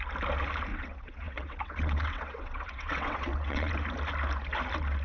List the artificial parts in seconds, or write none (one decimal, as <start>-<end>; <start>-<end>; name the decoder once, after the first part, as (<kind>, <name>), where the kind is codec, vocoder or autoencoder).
0.7-3.7 (vocoder, WaveNeXt)